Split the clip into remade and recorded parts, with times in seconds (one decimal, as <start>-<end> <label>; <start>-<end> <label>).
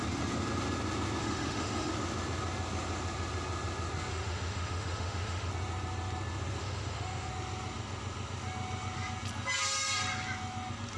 0.0-1.2 recorded; 1.2-1.9 remade; 1.9-4.1 recorded; 4.1-5.5 remade; 5.5-6.6 recorded; 6.6-7.3 remade; 7.3-11.0 recorded